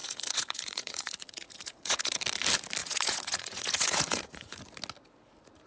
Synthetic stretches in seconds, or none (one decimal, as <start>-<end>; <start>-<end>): 0.0-2.2; 2.8-4.6